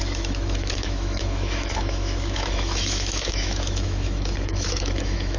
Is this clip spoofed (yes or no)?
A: yes